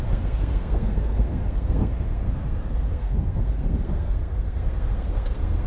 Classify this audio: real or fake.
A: fake